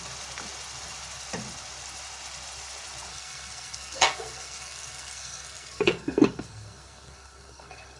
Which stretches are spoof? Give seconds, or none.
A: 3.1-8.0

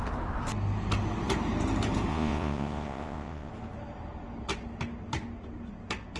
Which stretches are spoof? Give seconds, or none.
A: 2.1-3.5

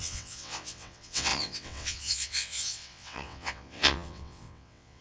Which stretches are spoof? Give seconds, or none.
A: 0.0-5.0

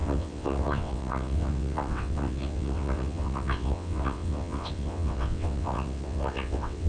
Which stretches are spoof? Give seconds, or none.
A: 0.0-6.9

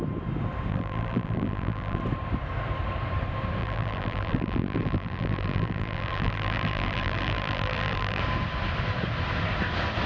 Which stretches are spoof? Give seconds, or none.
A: 0.7-2.0; 3.6-8.2

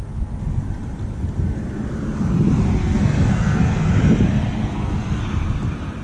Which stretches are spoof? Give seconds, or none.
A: 2.8-3.9; 4.6-5.2

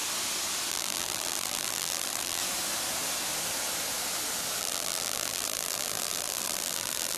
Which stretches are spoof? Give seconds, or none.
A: 0.7-2.4; 4.6-7.2